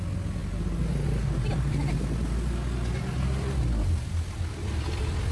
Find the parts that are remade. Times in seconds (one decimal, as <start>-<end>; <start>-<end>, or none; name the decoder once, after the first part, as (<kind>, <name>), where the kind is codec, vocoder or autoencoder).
none